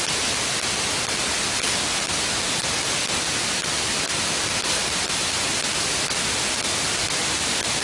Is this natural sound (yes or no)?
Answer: yes